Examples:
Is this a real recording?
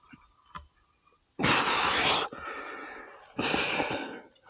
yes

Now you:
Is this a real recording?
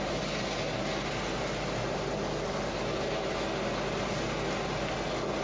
yes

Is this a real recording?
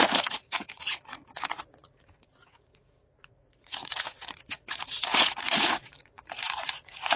no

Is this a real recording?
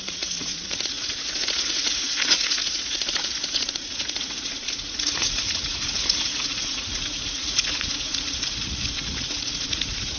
no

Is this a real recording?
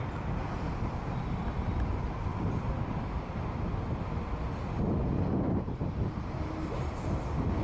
yes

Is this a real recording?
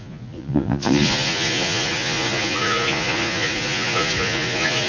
no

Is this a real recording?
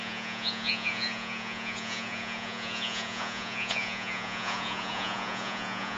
no